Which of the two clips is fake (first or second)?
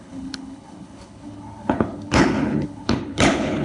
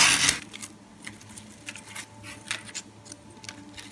first